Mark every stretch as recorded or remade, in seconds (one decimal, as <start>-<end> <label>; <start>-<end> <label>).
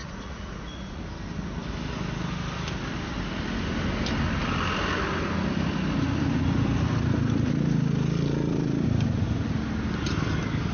0.0-1.0 remade; 1.0-10.7 recorded